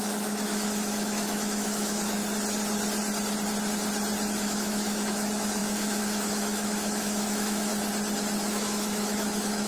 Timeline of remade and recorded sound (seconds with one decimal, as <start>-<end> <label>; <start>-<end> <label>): 0.0-2.2 remade; 2.2-4.3 recorded; 4.3-7.7 remade; 7.7-8.4 recorded; 8.4-9.7 remade

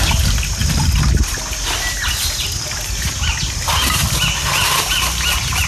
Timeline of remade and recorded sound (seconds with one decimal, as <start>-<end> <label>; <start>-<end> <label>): 0.0-5.7 recorded

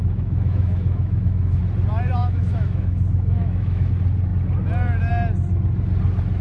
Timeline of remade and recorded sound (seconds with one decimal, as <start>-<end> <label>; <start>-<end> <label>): 0.0-1.6 remade; 1.6-2.2 recorded; 2.2-3.9 remade; 3.9-6.4 recorded

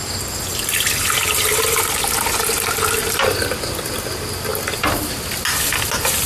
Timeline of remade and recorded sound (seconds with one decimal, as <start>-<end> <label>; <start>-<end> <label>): 0.0-6.3 recorded

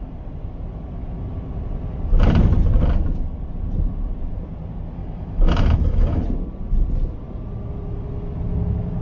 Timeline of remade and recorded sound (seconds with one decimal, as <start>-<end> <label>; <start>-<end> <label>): 0.0-5.0 recorded; 5.0-6.2 remade; 6.2-9.0 recorded

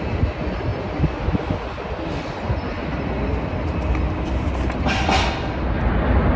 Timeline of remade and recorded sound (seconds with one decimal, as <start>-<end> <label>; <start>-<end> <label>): 0.0-6.4 recorded